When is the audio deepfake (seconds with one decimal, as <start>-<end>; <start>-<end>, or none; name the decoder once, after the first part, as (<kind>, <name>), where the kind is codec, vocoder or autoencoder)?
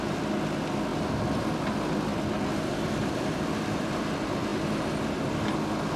2.1-4.0 (vocoder, BigVGAN v2)